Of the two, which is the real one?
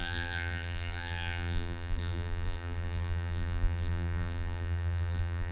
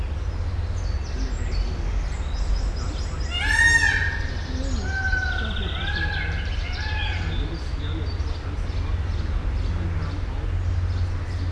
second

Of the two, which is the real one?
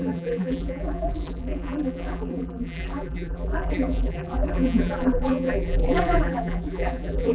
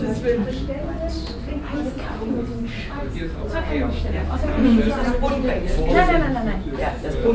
second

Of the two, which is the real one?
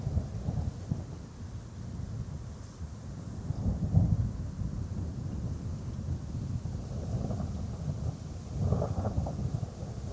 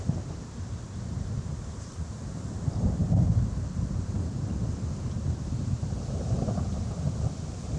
first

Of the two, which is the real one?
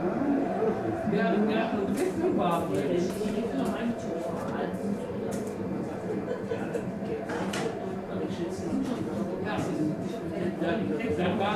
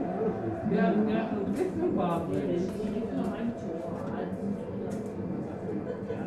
second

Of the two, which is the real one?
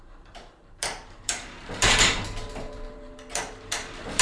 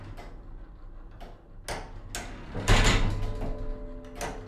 second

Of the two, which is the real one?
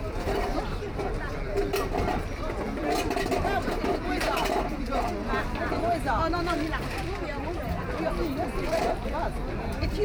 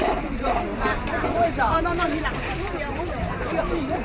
first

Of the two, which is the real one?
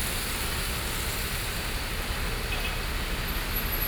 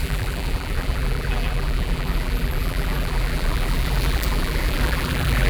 first